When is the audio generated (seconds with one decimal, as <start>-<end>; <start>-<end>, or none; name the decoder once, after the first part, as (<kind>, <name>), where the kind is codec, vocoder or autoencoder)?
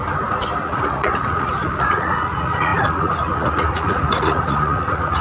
0.6-5.2 (vocoder, Vocos)